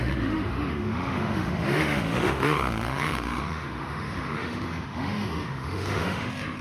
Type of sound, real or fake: fake